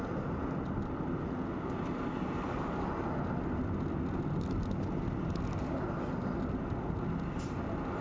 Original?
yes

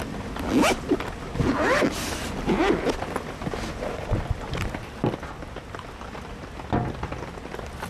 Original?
yes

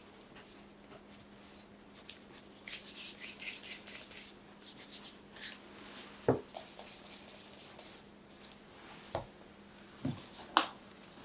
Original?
yes